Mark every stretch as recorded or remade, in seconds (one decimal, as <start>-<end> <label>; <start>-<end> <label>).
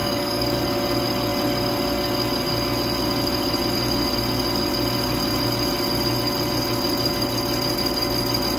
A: 0.0-0.6 remade; 0.6-8.6 recorded